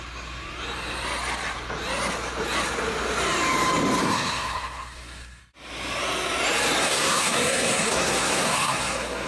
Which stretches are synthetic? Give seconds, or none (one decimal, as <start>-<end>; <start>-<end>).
4.0-5.4; 6.8-9.3